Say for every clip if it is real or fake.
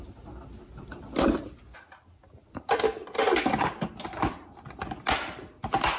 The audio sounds real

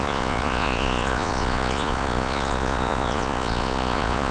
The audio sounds fake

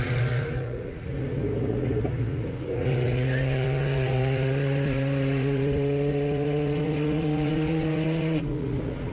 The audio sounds fake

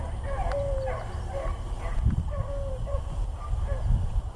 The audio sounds real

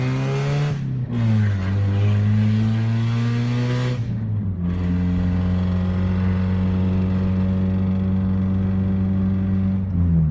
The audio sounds real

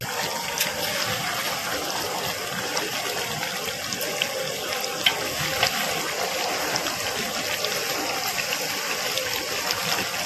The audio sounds real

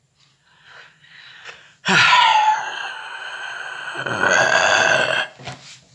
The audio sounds real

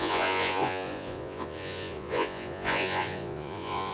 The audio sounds fake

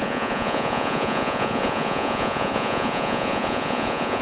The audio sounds fake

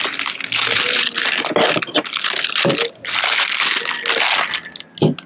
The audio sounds real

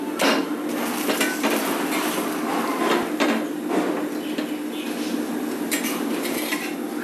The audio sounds real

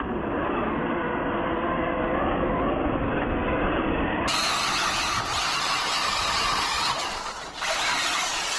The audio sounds real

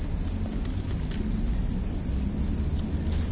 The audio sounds real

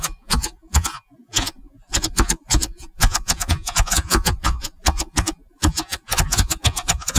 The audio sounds fake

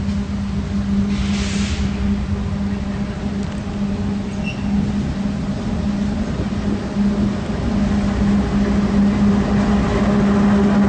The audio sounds real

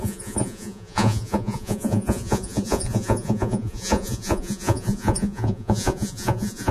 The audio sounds fake